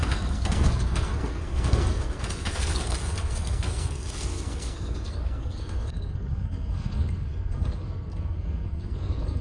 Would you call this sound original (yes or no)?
no